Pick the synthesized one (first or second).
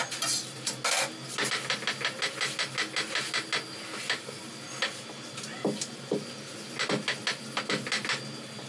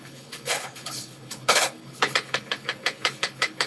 second